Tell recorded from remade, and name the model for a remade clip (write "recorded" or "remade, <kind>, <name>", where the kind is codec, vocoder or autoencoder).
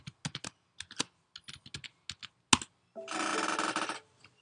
recorded